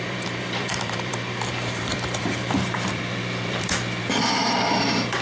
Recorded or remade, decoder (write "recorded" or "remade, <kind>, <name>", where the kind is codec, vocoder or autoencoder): remade, vocoder, BigVGAN v2